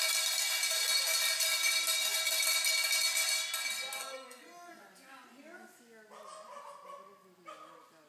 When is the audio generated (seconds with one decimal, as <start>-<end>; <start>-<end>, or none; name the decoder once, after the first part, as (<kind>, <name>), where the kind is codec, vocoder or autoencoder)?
4.0-4.8 (codec, SNAC)